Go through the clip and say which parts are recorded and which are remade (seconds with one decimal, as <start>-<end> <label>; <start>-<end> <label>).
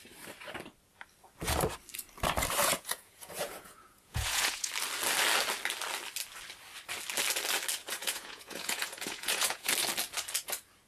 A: 0.0-2.6 recorded; 2.6-4.7 remade; 4.7-8.0 recorded; 8.0-9.7 remade; 9.7-10.9 recorded